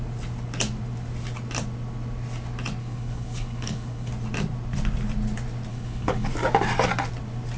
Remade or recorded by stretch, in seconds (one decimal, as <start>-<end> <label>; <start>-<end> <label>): 0.0-2.8 recorded; 2.8-4.1 remade; 4.1-5.7 recorded; 5.7-6.3 remade; 6.3-7.6 recorded